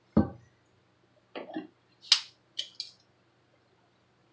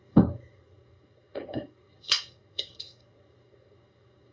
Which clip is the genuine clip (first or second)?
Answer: first